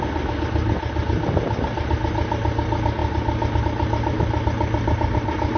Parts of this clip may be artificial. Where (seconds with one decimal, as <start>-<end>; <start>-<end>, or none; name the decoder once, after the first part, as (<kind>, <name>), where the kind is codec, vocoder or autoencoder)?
none